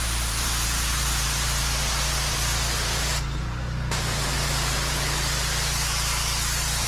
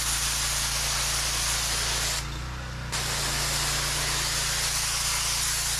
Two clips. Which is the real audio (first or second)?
second